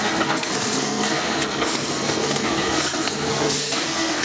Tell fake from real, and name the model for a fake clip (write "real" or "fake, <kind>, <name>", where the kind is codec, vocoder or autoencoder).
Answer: fake, codec, SNAC